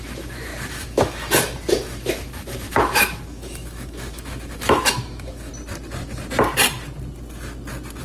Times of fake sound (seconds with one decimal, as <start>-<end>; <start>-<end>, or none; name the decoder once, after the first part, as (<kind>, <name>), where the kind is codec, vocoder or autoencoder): 0.0-5.5 (autoencoder, DAC-VAE)